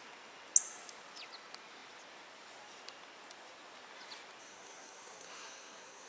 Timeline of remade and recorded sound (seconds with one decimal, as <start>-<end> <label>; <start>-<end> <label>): 0.0-4.4 recorded; 4.4-6.1 remade